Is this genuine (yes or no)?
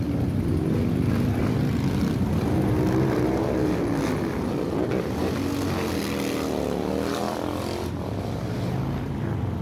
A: yes